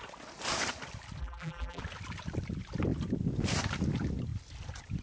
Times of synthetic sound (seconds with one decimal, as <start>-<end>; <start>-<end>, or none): 1.2-1.8